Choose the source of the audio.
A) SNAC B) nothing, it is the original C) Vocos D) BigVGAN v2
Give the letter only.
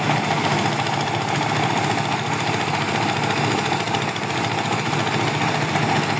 B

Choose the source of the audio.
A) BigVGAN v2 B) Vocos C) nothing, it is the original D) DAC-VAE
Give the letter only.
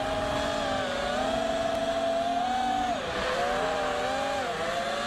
C